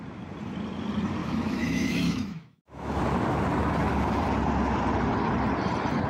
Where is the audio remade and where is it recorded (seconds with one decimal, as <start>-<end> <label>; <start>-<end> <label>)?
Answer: 0.0-1.2 recorded; 1.2-3.0 remade; 3.0-6.1 recorded